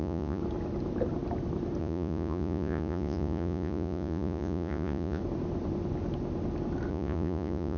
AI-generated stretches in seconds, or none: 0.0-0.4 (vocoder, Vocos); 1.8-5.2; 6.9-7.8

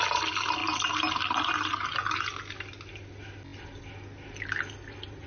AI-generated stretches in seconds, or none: none

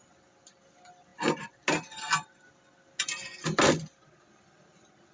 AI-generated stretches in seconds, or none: none

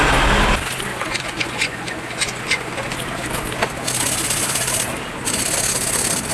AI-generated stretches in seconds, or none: 0.9-3.0 (vocoder, Vocos)

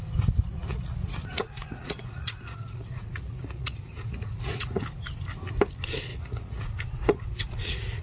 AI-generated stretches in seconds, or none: 0.5-4.8 (vocoder, Vocos); 6.1-8.0

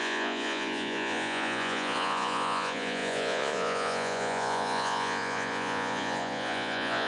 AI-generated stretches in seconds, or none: 0.0-7.1 (vocoder, Vocos)

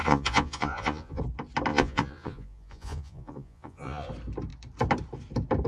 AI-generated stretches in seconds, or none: 0.0-1.2 (vocoder, Vocos); 1.7-4.1

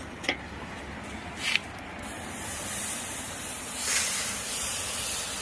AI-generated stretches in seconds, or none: none